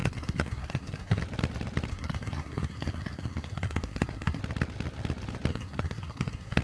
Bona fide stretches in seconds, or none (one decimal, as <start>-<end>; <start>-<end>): 1.2-1.9; 4.4-5.5